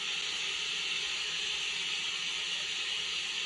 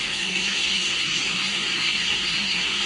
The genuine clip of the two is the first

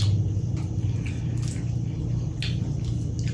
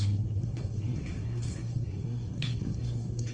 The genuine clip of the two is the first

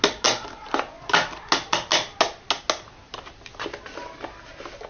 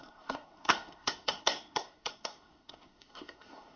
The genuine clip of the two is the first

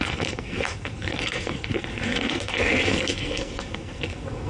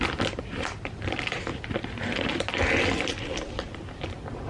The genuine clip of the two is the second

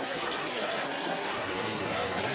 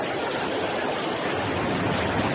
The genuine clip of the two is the second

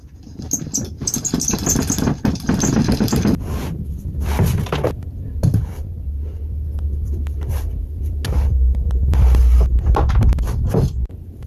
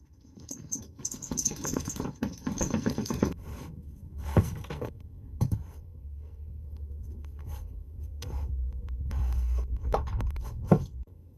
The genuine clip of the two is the first